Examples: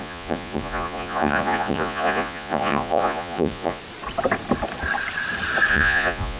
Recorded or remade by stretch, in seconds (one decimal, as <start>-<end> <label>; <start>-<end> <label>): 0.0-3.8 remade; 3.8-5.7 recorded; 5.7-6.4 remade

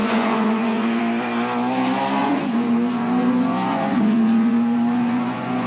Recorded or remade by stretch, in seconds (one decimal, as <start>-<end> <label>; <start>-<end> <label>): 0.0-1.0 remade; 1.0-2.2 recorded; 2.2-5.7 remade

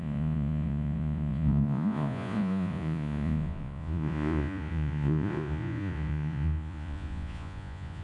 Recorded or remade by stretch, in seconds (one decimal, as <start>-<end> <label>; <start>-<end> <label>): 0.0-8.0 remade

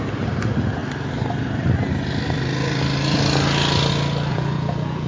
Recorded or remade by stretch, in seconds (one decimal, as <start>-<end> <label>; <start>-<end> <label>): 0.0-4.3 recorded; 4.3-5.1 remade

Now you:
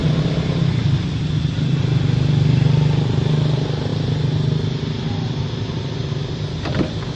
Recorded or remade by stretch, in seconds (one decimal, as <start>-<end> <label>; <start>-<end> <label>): 0.0-7.2 recorded

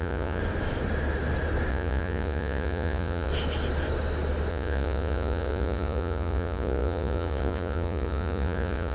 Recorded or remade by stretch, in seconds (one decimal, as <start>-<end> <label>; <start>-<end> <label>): 0.0-0.4 remade; 0.4-1.7 recorded; 1.7-3.3 remade; 3.3-4.5 recorded; 4.5-8.9 remade